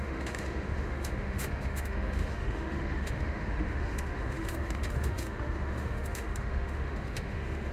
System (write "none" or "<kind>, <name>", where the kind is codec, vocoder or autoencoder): autoencoder, DAC-VAE